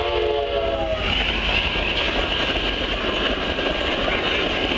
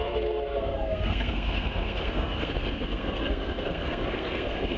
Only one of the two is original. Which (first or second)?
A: first